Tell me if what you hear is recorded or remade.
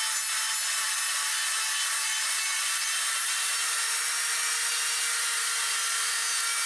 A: recorded